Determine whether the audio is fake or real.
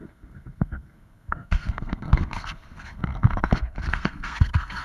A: fake